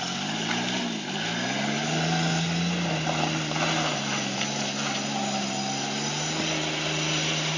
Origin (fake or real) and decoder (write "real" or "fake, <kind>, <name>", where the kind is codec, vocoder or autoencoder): real